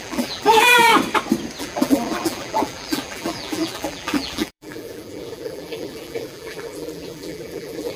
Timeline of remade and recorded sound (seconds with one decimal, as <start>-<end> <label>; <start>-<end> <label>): 0.0-0.9 remade; 0.9-1.6 recorded; 1.6-8.0 remade